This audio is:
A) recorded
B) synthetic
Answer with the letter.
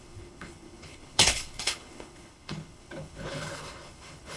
B